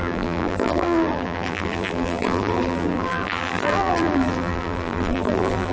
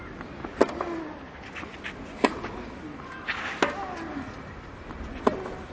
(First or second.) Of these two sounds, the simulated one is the first